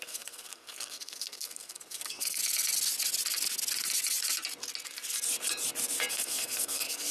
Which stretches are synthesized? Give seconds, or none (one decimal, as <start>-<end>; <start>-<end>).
0.0-2.4; 6.1-7.1